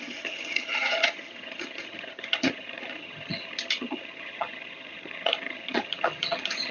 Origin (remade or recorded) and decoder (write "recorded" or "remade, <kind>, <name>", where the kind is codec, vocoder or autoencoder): remade, vocoder, HiFi-GAN